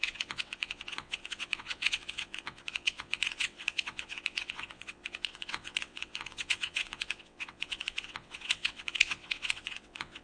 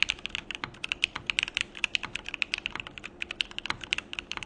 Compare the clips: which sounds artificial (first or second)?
first